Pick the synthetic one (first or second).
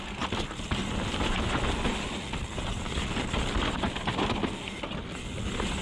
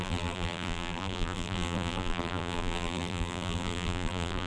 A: second